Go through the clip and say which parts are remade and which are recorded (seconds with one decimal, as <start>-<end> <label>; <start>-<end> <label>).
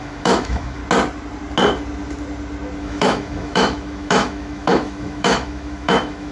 0.0-0.8 remade; 0.8-2.8 recorded; 2.8-6.3 remade